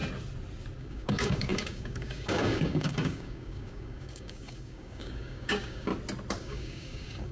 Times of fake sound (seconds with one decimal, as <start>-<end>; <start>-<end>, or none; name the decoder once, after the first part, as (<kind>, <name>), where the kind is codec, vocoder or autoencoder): 0.8-5.9 (codec, DAC); 6.4-7.3

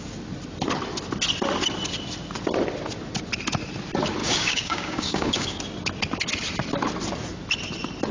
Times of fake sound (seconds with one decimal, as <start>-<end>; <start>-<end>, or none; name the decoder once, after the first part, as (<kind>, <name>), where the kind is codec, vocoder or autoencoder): 4.2-5.6 (codec, DAC)

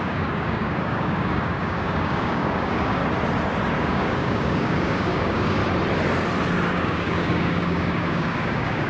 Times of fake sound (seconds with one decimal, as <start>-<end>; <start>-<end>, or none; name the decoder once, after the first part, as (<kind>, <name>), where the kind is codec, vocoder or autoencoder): 0.0-3.0 (codec, DAC); 3.8-5.6; 6.7-8.9

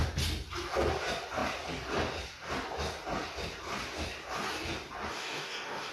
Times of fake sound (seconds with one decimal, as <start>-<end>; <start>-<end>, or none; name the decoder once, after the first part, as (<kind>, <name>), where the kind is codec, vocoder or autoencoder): 5.1-5.9 (codec, DAC)